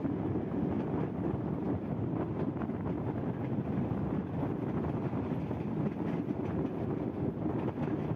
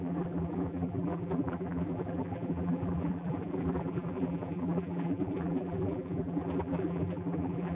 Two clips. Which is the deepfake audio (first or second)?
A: second